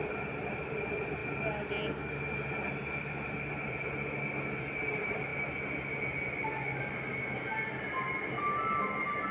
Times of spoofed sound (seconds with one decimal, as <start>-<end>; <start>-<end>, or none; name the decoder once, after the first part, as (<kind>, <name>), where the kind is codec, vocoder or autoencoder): none